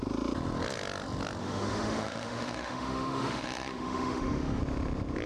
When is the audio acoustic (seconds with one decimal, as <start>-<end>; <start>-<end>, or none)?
0.0-1.4; 4.6-5.3